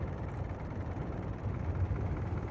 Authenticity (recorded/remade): remade